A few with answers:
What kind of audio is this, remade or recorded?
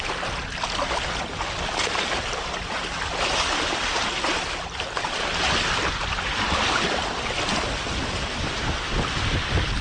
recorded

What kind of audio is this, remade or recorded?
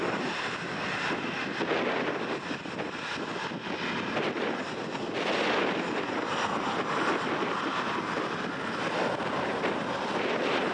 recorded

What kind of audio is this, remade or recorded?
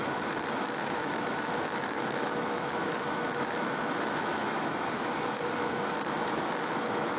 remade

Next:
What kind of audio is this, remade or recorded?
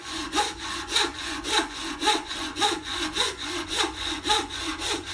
remade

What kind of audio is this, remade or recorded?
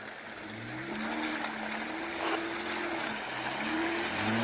recorded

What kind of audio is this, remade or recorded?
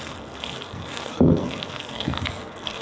remade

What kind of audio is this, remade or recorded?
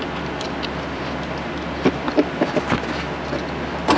recorded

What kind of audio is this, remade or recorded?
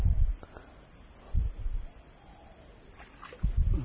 recorded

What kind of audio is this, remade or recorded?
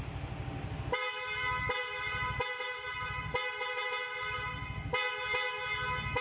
recorded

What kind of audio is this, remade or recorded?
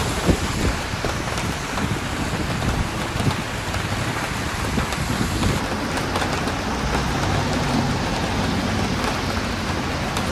recorded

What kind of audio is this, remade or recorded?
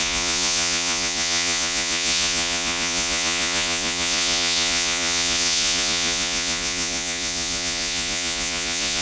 remade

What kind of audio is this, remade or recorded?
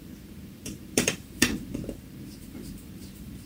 remade